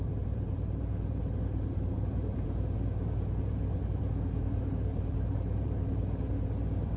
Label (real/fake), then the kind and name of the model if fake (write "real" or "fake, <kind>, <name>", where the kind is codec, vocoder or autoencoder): fake, vocoder, BigVGAN v2